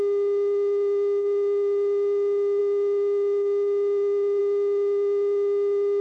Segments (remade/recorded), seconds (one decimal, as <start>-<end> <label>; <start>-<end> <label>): 0.0-6.0 recorded